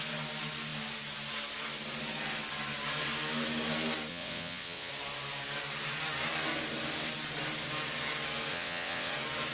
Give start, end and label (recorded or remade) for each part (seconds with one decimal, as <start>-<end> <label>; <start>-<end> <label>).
0.0-4.1 recorded; 4.1-4.9 remade; 4.9-8.5 recorded; 8.5-9.1 remade; 9.1-9.5 recorded